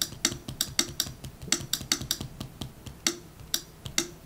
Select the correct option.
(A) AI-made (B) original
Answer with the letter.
B